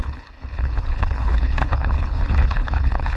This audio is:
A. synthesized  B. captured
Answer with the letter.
A